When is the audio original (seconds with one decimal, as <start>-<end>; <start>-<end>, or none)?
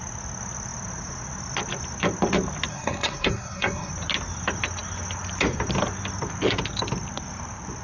0.0-2.7; 3.9-7.8